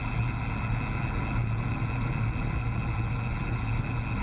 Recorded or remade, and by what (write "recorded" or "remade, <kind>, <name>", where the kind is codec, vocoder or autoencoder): recorded